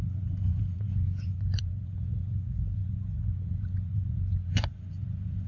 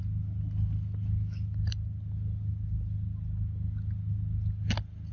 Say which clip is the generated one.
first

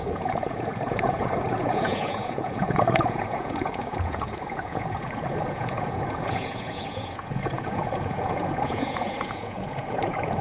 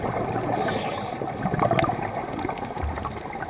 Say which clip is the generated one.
first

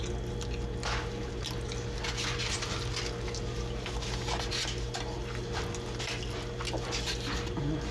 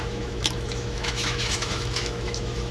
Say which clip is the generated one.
second